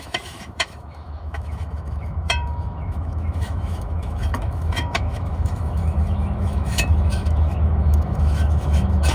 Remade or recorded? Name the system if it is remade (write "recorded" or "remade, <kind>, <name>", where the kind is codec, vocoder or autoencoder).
remade, autoencoder, DAC-VAE